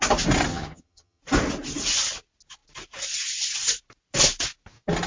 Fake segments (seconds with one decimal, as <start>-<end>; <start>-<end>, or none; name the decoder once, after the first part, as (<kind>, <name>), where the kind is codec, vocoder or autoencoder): 0.5-1.2 (vocoder, HiFi-GAN)